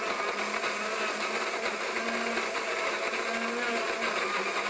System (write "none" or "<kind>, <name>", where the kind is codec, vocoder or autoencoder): none